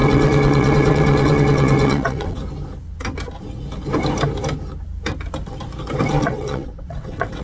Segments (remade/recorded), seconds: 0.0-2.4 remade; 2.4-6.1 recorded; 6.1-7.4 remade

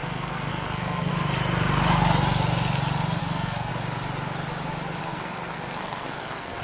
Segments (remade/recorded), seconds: 0.0-1.1 remade; 1.1-3.2 recorded; 3.2-3.7 remade; 3.7-5.0 recorded; 5.0-6.6 remade

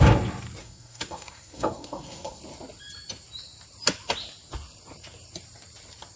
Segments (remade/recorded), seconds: 0.0-0.6 recorded; 0.6-2.4 remade; 2.4-6.2 recorded